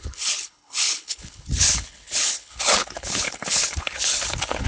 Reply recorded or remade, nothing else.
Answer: remade